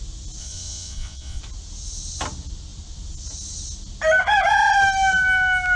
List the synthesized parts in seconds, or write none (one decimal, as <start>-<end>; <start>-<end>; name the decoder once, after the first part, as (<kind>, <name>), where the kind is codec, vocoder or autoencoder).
0.4-1.4 (vocoder, WaveNeXt)